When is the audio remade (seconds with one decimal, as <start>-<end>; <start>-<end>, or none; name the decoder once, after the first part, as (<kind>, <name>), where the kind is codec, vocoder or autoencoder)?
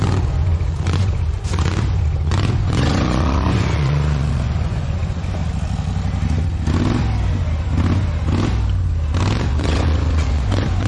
0.0-5.4 (vocoder, Vocos); 9.5-10.9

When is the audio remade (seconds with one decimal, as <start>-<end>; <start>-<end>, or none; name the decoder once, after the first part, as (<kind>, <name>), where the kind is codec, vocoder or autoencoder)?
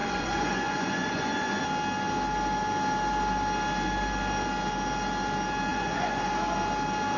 0.0-1.6 (vocoder, Vocos); 5.7-6.3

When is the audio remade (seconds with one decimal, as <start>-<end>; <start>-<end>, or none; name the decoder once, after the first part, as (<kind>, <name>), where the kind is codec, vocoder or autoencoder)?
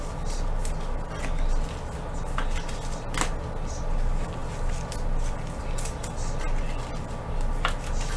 none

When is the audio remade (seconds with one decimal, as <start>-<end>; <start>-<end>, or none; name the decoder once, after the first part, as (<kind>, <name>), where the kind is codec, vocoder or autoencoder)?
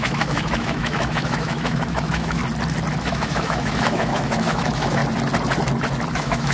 0.0-2.4 (autoencoder, DAC-VAE); 3.0-5.0; 6.1-6.5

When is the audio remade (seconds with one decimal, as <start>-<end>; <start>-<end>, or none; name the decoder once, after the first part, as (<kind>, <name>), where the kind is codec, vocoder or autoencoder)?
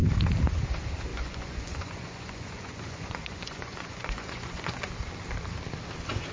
1.1-4.9 (vocoder, Vocos)